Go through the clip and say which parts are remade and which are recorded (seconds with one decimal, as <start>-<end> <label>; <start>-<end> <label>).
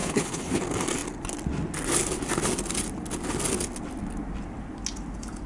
0.0-0.6 remade; 0.6-5.5 recorded